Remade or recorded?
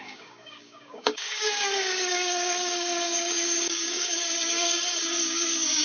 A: remade